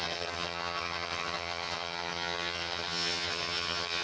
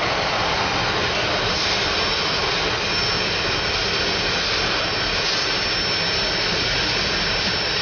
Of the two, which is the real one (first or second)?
second